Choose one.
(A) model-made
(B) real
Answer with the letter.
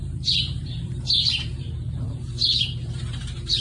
A